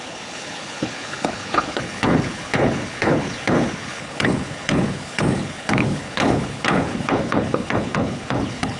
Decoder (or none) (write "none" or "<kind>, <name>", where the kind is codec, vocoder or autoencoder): codec, HILCodec